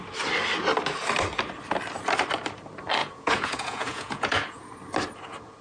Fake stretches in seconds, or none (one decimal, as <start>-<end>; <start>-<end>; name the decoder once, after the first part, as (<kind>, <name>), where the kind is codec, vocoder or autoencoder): 3.0-4.7 (vocoder, Vocos)